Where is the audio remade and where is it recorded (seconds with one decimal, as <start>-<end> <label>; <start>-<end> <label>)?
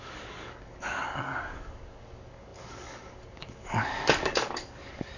0.0-5.2 remade